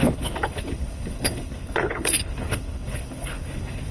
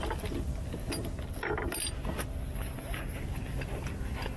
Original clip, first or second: second